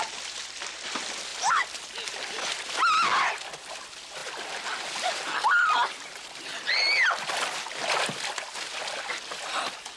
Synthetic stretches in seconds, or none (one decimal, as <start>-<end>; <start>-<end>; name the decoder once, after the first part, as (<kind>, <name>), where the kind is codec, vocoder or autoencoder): none